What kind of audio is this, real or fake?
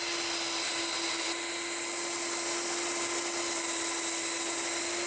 real